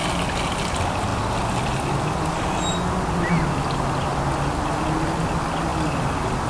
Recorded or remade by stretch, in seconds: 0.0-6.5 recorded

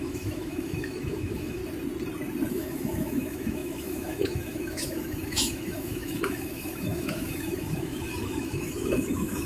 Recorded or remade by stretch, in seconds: 0.0-1.6 remade; 1.6-2.5 recorded; 2.5-9.5 remade

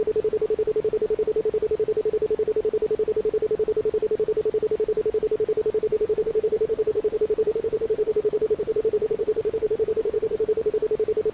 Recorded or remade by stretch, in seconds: 0.0-5.9 recorded; 5.9-10.7 remade; 10.7-11.3 recorded

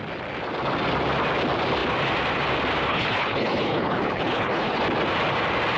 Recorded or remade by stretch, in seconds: 0.0-2.9 recorded; 2.9-4.8 remade; 4.8-5.8 recorded

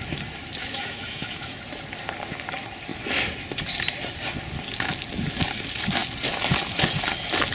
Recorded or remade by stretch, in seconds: 0.0-0.6 recorded; 0.6-1.6 remade; 1.6-7.5 recorded